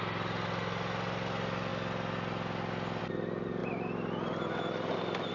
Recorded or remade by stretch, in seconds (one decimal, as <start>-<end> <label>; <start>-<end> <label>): 0.0-5.3 recorded